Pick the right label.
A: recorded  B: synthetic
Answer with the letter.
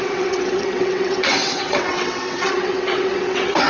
B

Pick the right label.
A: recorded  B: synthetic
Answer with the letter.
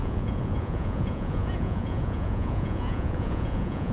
B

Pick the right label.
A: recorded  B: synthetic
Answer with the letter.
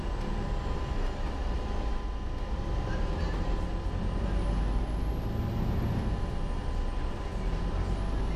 A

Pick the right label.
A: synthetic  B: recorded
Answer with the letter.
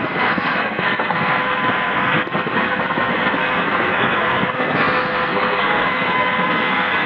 A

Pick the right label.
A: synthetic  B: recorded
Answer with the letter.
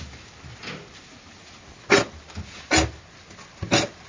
B